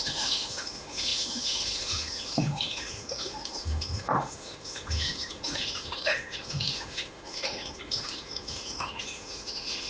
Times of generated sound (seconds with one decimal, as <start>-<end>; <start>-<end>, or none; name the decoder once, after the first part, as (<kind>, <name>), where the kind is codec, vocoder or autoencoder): 0.0-9.9 (autoencoder, DAC-VAE)